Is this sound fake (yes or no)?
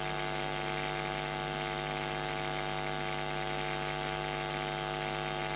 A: no